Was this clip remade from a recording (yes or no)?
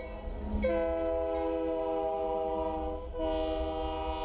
no